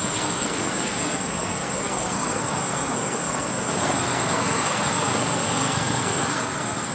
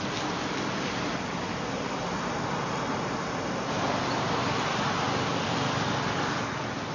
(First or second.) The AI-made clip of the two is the first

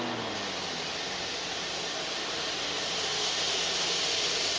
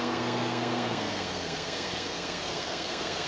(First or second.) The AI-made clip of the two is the second